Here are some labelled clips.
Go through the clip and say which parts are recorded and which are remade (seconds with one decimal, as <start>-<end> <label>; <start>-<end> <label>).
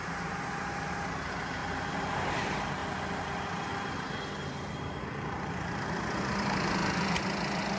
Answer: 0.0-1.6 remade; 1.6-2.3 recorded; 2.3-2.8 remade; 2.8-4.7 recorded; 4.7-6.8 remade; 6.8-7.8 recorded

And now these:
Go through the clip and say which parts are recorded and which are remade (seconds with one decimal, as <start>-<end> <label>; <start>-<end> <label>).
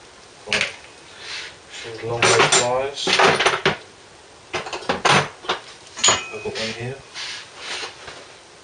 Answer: 0.0-8.6 recorded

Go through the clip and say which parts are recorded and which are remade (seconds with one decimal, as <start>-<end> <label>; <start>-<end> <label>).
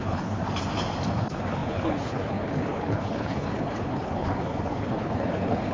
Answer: 0.0-0.4 remade; 0.4-1.1 recorded; 1.1-5.7 remade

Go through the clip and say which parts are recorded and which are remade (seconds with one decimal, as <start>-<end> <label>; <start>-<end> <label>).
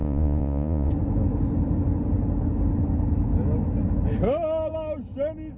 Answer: 0.0-0.9 remade; 0.9-5.6 recorded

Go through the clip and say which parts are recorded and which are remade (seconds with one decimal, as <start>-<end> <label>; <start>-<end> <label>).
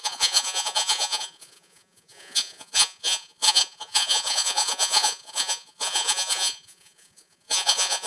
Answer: 0.0-8.1 remade